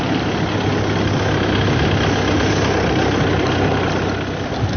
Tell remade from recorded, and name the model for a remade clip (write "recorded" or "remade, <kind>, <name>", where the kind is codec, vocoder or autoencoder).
recorded